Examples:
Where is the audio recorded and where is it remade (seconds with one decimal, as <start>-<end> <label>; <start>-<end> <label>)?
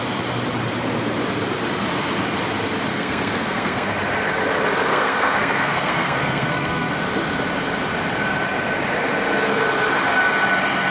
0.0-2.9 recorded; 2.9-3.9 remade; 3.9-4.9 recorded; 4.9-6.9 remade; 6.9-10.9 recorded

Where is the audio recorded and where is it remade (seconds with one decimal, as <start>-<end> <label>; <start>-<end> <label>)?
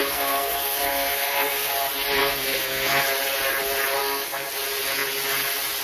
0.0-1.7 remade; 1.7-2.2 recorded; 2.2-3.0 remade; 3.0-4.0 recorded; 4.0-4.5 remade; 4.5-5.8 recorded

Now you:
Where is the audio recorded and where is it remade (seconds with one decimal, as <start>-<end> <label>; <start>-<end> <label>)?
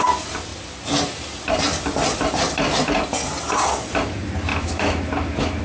0.0-4.5 recorded; 4.5-5.6 remade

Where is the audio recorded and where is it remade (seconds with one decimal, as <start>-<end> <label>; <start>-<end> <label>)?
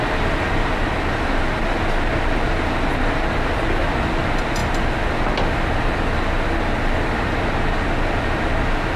0.0-9.0 recorded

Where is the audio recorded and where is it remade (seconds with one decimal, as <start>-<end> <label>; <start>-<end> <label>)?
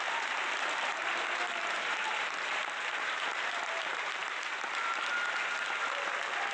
0.0-1.0 recorded; 1.0-3.8 remade; 3.8-6.5 recorded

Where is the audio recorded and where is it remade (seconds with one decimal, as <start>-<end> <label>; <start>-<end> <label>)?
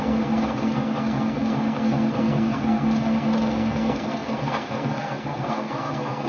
0.0-6.3 remade